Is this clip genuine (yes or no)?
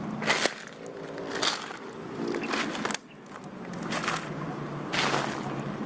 yes